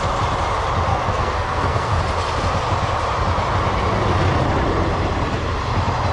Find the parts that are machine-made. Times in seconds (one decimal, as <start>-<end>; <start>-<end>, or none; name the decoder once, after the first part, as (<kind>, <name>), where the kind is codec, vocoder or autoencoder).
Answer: 0.9-2.0 (codec, SNAC)